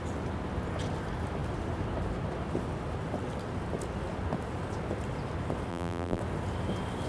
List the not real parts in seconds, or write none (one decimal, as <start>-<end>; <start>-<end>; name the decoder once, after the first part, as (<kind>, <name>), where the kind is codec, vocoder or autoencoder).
5.7-6.2 (vocoder, BigVGAN v2)

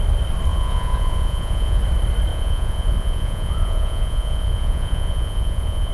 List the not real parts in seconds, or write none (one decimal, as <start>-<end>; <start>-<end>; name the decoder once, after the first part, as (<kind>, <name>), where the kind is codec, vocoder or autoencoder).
0.5-1.8 (vocoder, Vocos); 2.3-5.9

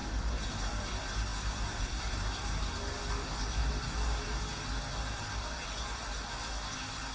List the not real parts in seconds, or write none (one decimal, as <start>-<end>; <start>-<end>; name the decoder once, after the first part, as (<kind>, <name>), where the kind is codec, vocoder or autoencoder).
none

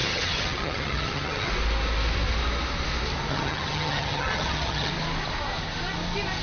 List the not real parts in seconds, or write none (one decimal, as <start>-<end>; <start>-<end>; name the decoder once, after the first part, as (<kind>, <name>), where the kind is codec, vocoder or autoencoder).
0.0-1.5 (vocoder, HiFi-GAN); 3.3-4.9

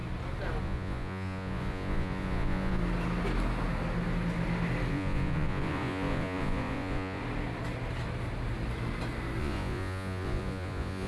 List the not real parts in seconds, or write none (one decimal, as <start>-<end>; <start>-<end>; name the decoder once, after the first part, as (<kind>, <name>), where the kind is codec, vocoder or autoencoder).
0.6-2.8 (vocoder, Vocos); 4.9-7.2; 9.4-11.1

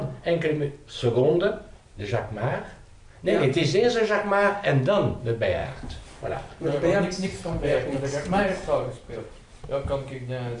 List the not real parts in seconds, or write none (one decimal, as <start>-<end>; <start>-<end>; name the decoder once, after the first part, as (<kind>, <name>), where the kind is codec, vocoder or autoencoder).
0.9-3.6 (vocoder, BigVGAN v2); 5.6-9.5